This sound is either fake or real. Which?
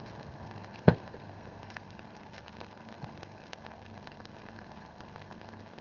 fake